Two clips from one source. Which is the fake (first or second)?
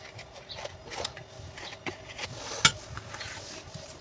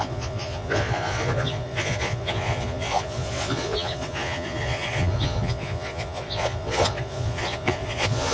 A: second